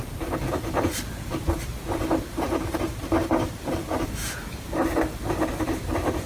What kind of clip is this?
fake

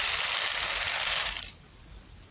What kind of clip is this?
fake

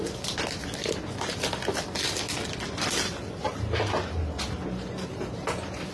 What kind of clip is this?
real